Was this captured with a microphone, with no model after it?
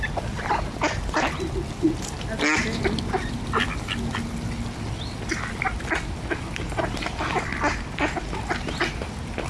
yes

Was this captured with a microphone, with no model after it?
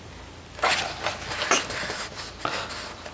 yes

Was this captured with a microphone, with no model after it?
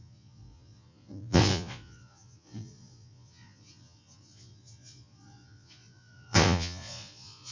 no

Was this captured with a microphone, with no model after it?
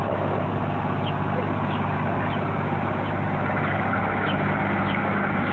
yes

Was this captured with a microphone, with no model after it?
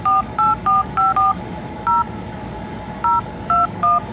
no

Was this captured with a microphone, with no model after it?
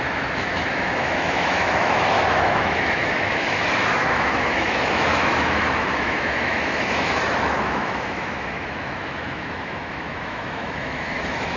no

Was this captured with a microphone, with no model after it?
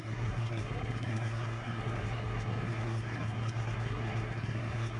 no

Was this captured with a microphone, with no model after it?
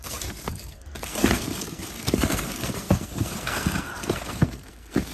no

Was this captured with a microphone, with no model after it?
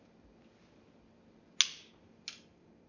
yes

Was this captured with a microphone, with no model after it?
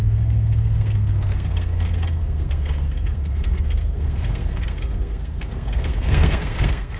no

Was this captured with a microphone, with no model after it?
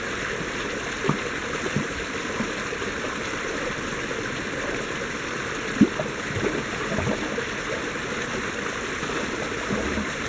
yes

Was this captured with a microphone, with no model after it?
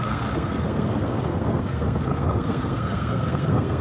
no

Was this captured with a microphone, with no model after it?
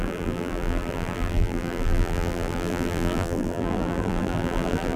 no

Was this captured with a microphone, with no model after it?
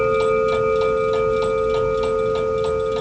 yes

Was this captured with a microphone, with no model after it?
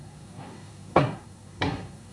no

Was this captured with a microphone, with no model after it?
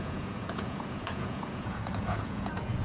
no